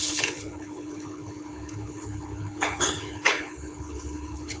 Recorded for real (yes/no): no